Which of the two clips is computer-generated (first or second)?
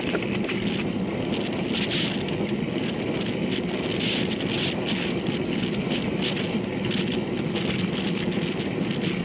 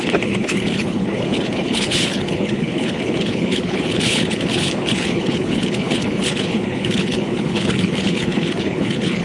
second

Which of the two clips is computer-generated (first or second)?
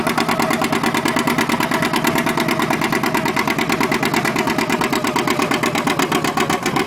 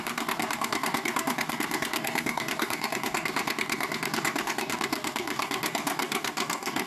second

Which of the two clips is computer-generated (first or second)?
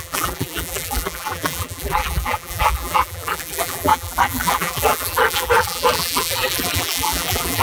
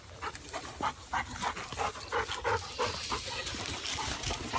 first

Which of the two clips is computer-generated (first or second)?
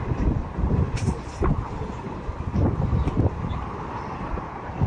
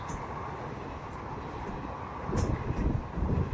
first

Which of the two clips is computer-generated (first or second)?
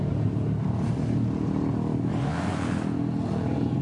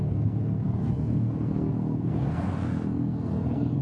second